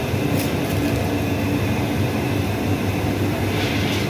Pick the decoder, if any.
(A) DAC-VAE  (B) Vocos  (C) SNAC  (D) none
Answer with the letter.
D